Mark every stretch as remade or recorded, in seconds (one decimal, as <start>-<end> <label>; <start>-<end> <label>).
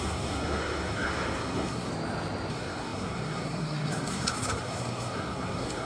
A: 0.0-1.9 remade; 1.9-2.5 recorded; 2.5-5.9 remade